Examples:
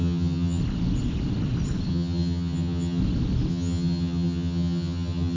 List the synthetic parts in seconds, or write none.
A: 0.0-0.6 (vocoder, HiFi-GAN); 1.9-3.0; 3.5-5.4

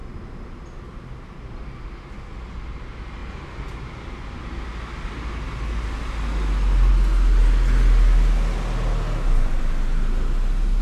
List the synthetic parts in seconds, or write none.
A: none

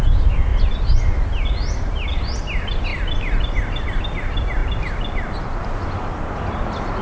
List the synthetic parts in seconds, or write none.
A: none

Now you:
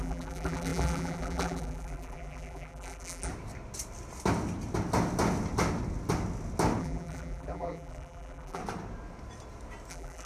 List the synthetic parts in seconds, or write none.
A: 0.0-3.3 (vocoder, BigVGAN v2); 6.8-8.6; 9.9-10.3

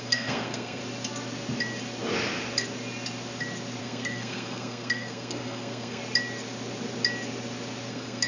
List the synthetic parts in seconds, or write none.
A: 0.0-0.8 (codec, SNAC); 3.8-6.0; 7.9-8.3

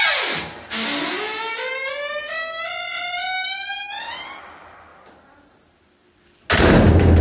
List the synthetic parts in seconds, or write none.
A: none

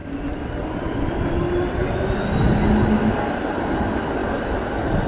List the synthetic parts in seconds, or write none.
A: none